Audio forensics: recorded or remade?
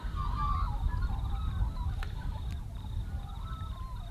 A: recorded